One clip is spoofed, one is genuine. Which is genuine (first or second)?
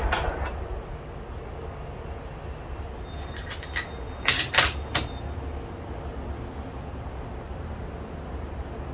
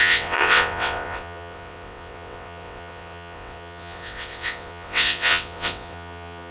first